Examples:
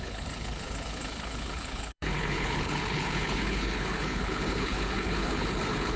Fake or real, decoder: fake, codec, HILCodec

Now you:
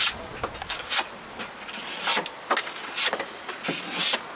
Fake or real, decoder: real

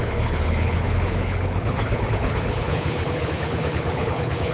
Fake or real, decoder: fake, codec, HILCodec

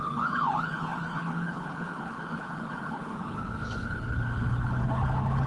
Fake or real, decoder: fake, codec, HILCodec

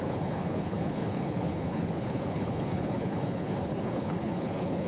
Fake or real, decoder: fake, codec, HILCodec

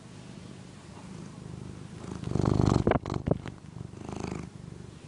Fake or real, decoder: real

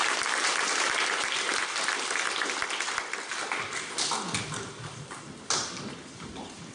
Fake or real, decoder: real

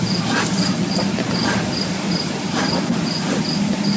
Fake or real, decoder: real